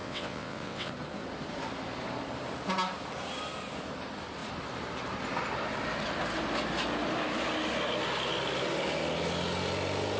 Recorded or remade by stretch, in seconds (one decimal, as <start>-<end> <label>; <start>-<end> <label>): 0.0-0.9 remade; 0.9-10.2 recorded